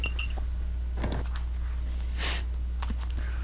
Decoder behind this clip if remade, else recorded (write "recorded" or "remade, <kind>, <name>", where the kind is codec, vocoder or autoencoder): recorded